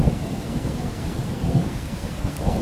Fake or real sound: fake